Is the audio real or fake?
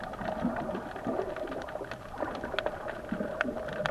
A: real